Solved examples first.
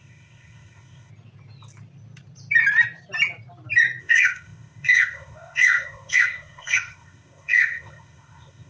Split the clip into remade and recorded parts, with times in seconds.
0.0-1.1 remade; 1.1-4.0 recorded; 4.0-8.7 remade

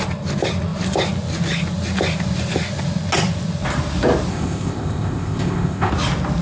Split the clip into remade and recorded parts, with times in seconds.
0.0-4.3 recorded; 4.3-5.9 remade; 5.9-6.4 recorded